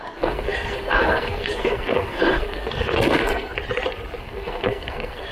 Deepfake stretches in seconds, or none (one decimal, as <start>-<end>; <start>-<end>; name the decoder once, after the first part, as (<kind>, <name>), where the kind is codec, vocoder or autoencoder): 0.0-3.5 (codec, SNAC); 4.2-5.3